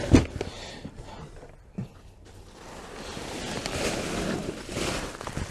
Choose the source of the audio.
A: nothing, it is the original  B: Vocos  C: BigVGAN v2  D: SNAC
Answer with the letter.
A